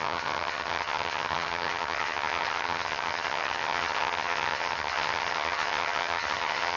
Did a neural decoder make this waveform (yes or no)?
yes